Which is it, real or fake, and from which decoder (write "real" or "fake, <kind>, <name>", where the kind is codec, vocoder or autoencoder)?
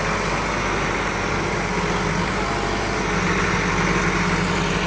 real